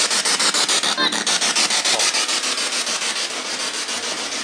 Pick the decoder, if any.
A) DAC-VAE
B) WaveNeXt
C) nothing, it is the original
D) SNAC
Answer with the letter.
C